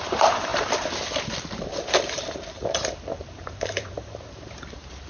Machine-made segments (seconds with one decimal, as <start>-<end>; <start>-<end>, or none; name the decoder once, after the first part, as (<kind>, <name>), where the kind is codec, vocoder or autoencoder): 0.0-5.1 (vocoder, BigVGAN v2)